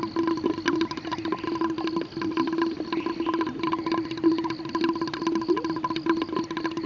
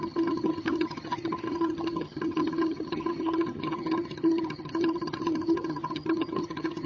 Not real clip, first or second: second